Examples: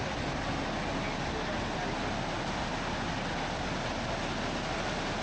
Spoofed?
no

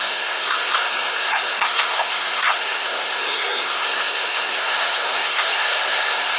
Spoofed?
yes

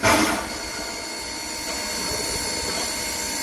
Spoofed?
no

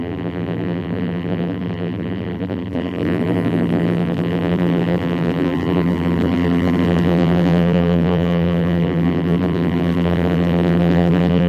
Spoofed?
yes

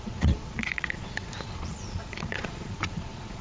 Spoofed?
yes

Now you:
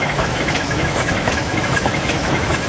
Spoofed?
yes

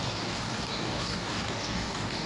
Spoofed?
yes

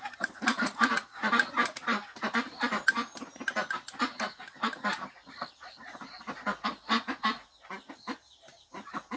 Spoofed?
no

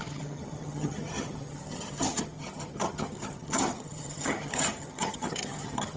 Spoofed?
yes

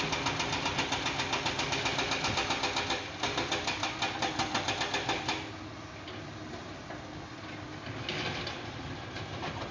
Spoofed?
no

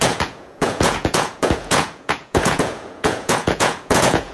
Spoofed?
yes